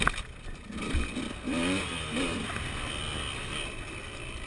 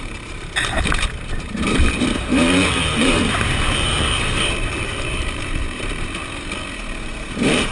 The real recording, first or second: first